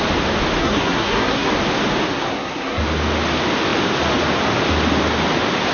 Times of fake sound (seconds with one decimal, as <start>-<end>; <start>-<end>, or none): 0.6-1.5; 2.1-2.8

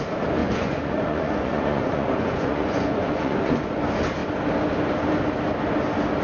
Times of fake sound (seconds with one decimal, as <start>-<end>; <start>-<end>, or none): 0.4-3.8

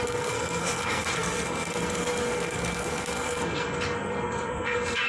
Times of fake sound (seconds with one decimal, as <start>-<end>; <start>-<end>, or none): 0.0-5.1

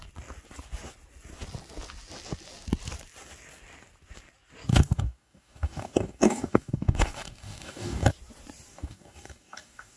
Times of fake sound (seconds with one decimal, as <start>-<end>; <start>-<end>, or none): 4.7-8.1; 8.7-10.0

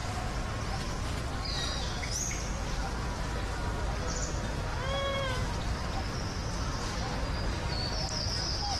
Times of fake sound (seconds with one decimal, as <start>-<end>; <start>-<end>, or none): 4.7-7.0

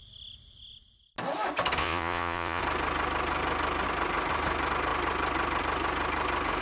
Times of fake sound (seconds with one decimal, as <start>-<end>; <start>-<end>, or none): 1.8-2.6

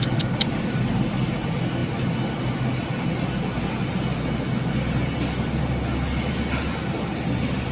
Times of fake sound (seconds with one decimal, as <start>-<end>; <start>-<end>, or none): none

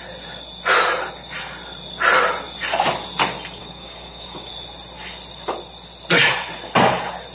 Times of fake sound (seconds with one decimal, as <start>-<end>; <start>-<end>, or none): 3.6-4.5